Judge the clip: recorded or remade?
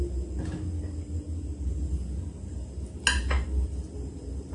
recorded